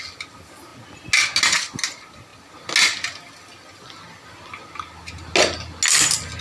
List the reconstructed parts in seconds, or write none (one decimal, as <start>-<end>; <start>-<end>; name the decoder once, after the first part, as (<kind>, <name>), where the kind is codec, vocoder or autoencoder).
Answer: none